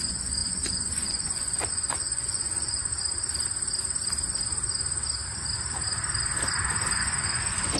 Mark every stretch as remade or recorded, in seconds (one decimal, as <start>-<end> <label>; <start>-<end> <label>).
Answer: 0.0-2.9 remade; 2.9-6.9 recorded; 6.9-7.8 remade